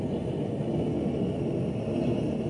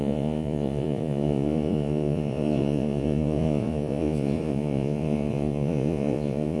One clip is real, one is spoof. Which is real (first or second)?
first